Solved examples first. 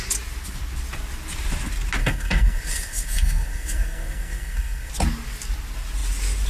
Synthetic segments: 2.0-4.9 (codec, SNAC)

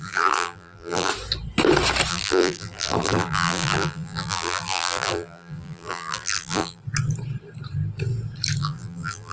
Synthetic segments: 0.0-1.1 (vocoder, BigVGAN v2); 2.1-6.8; 8.6-9.3

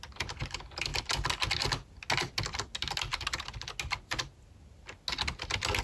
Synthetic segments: none

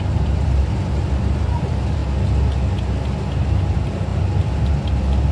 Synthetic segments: 0.0-2.0 (vocoder, BigVGAN v2); 3.4-5.3

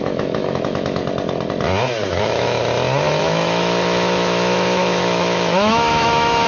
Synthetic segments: 0.0-1.0 (autoencoder, DAC-VAE); 2.1-2.6; 3.2-6.5

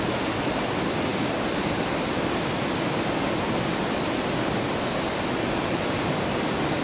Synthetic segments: none

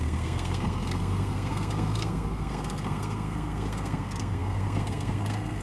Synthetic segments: 0.0-5.6 (codec, SNAC)

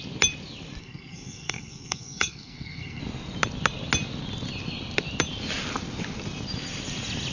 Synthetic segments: 0.8-3.0 (codec, SNAC)